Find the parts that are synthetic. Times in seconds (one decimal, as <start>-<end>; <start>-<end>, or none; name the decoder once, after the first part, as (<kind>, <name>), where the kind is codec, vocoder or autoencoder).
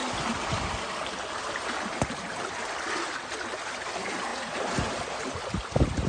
none